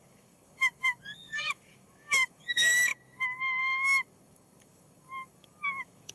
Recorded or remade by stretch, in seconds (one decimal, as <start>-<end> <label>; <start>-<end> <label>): 0.0-6.1 remade